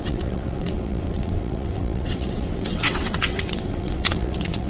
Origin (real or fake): fake